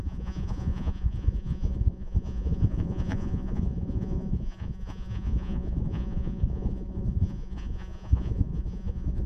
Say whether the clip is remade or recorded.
remade